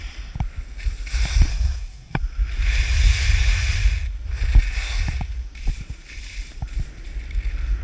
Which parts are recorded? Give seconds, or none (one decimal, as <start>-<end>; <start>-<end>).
0.0-1.5; 2.2-7.8